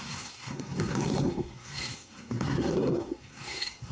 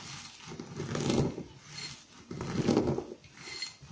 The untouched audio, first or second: second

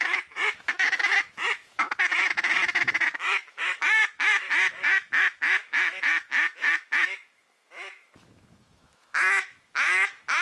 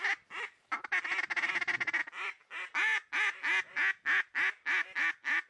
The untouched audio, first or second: second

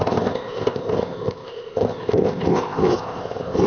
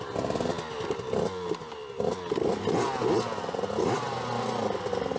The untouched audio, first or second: second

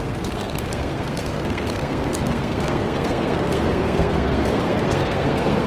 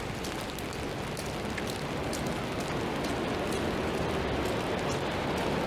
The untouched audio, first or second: second